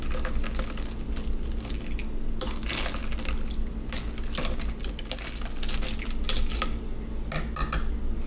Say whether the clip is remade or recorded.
recorded